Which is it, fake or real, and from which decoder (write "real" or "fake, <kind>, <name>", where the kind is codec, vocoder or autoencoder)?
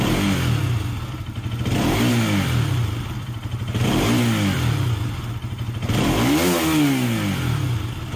real